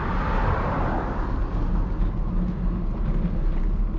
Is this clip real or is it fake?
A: real